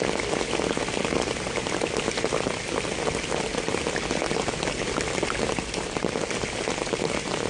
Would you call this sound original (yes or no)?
yes